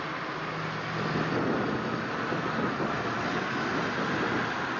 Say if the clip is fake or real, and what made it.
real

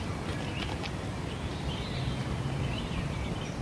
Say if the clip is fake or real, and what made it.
real